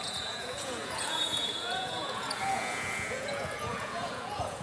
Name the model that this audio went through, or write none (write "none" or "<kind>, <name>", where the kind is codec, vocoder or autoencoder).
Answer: vocoder, Vocos